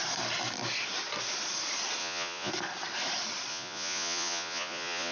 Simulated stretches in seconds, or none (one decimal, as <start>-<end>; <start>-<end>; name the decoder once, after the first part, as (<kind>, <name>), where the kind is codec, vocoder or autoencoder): 2.0-2.5 (vocoder, Vocos); 3.5-5.1